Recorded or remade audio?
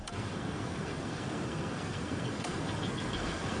remade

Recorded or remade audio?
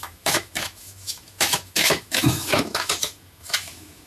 remade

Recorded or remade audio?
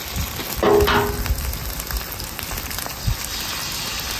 recorded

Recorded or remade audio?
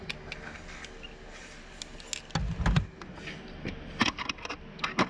recorded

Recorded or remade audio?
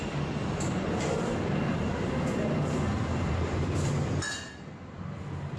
recorded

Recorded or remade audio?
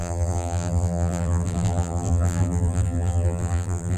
remade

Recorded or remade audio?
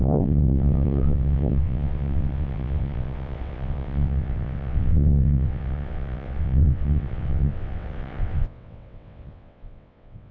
remade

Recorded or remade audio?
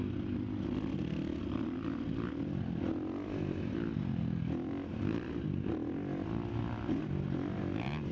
recorded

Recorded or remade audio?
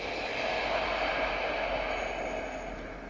recorded